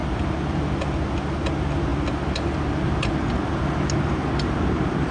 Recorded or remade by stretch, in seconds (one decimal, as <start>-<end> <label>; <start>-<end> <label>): 0.0-5.1 recorded